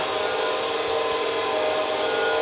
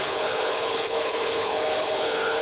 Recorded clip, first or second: first